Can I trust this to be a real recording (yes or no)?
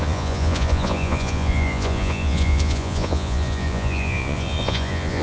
no